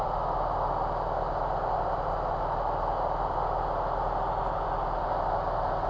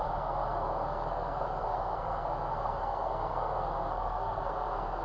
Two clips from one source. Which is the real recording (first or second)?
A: first